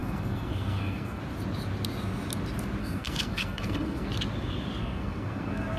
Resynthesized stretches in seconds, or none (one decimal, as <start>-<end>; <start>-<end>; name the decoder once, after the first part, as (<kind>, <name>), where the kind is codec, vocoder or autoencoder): 0.0-1.2 (codec, SNAC); 2.8-4.1; 4.8-5.8